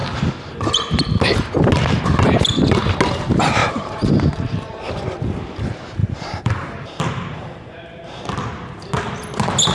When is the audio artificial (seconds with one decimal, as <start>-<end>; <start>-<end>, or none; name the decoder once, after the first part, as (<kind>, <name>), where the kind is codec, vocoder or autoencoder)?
3.6-4.2 (vocoder, BigVGAN v2); 6.0-8.2